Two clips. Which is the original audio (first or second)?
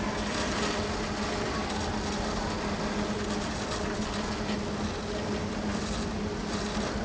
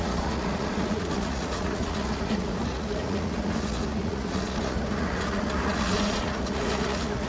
first